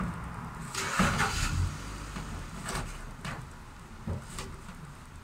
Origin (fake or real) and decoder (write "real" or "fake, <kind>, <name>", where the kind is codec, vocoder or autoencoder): real